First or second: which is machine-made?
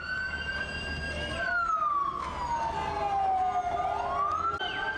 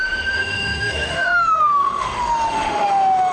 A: second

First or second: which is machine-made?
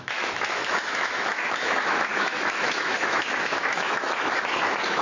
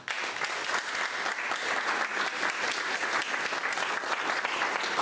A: first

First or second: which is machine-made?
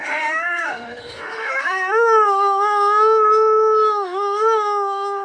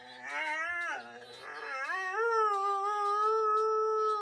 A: first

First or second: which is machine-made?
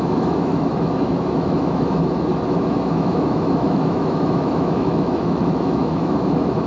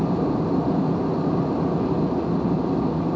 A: first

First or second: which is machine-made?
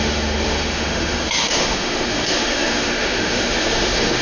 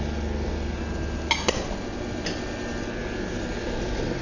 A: first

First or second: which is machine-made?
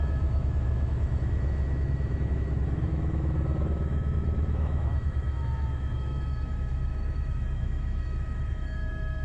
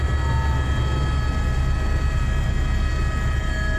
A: first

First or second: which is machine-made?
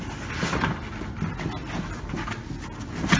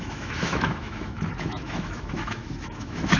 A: second